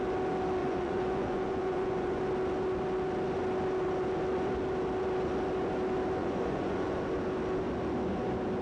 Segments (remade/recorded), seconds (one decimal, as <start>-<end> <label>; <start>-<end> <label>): 0.0-0.6 recorded; 0.6-2.2 remade; 2.2-6.2 recorded; 6.2-7.0 remade; 7.0-8.6 recorded